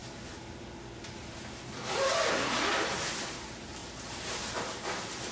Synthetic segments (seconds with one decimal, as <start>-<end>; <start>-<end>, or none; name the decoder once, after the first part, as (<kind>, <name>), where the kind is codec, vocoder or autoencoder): 3.8-5.3 (vocoder, BigVGAN v2)